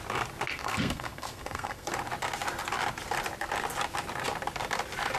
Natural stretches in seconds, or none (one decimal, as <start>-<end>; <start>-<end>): 0.0-0.5; 1.9-5.2